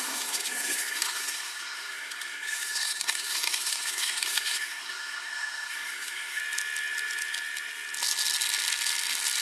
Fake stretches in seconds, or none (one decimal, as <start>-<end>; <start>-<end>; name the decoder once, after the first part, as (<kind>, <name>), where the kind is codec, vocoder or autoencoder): 0.0-6.4 (codec, SNAC)